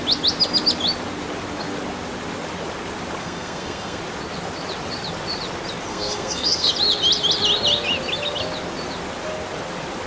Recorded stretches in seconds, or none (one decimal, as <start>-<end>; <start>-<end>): 0.0-3.2; 4.0-5.9; 6.7-10.1